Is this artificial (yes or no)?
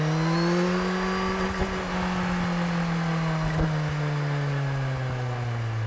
no